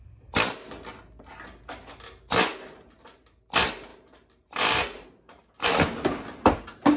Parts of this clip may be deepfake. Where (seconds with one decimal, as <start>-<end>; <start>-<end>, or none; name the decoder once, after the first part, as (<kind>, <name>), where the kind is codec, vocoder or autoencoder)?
3.9-5.5 (vocoder, BigVGAN v2)